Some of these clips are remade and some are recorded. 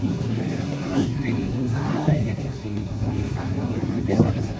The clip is remade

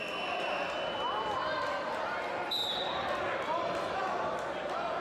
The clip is remade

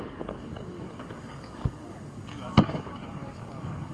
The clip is remade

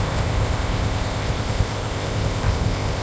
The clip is remade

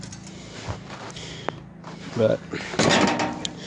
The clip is recorded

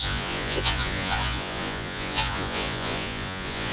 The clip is remade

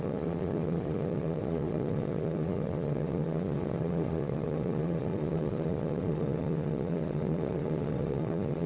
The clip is remade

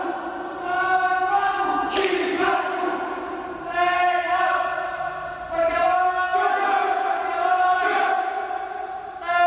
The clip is recorded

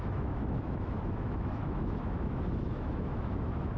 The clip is remade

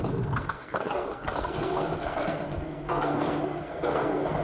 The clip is remade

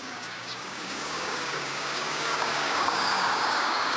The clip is remade